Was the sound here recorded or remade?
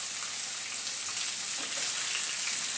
recorded